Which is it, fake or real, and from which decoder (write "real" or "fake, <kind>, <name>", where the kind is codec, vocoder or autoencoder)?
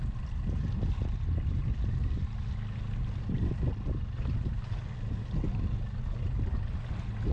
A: real